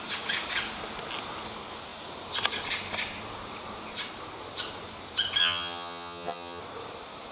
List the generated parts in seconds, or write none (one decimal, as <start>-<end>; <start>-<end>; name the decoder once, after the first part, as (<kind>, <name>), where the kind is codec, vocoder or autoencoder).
5.4-6.6 (vocoder, HiFi-GAN)